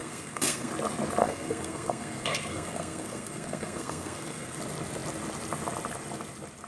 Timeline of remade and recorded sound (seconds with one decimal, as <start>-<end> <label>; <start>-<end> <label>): 0.0-0.7 remade; 0.7-1.2 recorded; 1.2-4.6 remade; 4.6-6.7 recorded